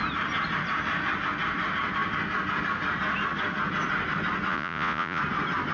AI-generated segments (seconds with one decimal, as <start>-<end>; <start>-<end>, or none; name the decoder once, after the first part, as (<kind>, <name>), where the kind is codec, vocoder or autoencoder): 4.5-5.2 (vocoder, Vocos)